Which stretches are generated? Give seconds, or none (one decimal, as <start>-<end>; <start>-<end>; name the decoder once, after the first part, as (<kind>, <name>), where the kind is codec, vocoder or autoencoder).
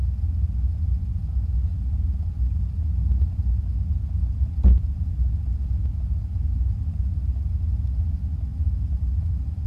none